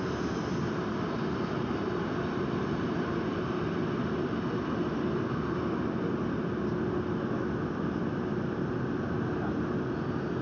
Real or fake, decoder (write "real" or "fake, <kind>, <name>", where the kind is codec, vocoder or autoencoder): real